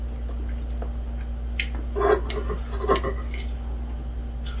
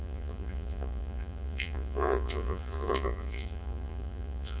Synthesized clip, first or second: second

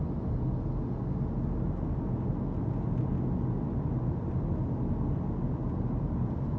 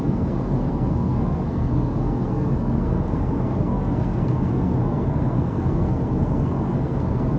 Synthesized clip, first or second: second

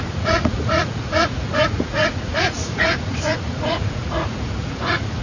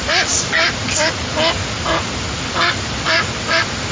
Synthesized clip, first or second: first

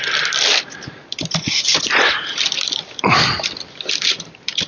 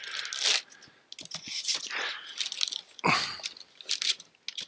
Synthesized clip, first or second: first